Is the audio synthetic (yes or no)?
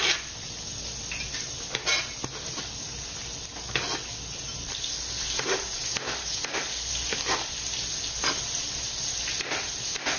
no